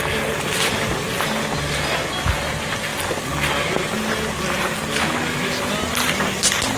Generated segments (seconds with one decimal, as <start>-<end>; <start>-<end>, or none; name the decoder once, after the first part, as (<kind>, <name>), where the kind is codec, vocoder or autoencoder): none